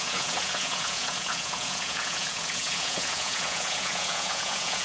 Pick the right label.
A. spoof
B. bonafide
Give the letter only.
A